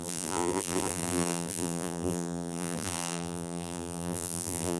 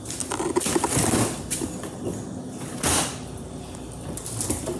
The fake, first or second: first